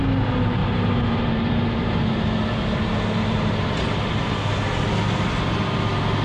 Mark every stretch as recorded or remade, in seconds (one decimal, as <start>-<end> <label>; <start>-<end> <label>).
0.0-0.6 recorded; 0.6-4.3 remade; 4.3-6.2 recorded